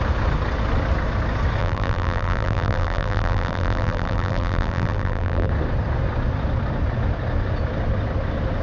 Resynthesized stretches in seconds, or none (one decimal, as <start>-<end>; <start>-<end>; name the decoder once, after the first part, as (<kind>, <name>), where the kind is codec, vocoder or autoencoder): 1.6-5.5 (vocoder, BigVGAN v2)

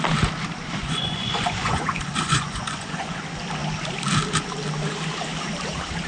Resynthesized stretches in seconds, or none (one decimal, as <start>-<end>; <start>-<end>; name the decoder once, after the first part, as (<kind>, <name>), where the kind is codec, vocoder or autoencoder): 0.8-3.2 (vocoder, Vocos)

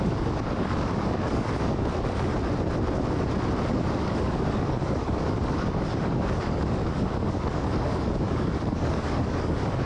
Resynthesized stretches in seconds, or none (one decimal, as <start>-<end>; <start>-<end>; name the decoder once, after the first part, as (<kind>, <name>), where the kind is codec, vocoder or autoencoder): 0.0-2.3 (codec, DAC); 3.7-9.9